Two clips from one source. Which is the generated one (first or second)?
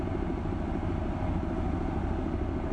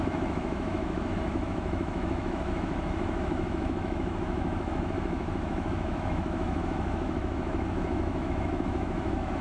second